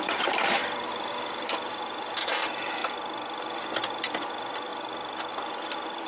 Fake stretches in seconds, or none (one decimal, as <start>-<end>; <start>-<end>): 0.0-0.6; 1.1-2.8; 3.4-4.7; 5.3-6.1